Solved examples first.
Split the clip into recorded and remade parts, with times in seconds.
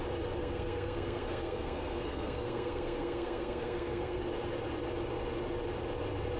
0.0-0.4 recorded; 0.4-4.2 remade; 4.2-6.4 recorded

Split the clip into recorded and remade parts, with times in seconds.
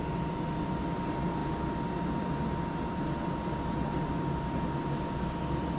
0.0-5.8 recorded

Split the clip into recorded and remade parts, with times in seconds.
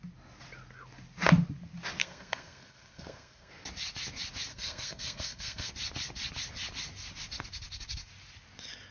0.0-2.0 recorded; 2.0-3.5 remade; 3.5-4.5 recorded; 4.5-5.7 remade; 5.7-8.9 recorded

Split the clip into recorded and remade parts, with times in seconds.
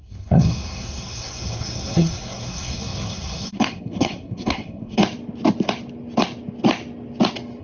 0.0-5.0 remade; 5.0-7.6 recorded